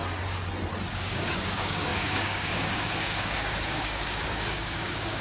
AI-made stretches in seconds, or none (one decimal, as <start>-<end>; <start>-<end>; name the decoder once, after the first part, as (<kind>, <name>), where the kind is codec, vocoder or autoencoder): 0.9-5.2 (codec, DAC)